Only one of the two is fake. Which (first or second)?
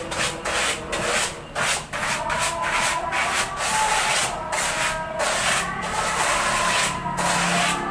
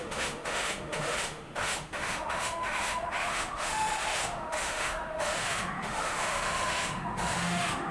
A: second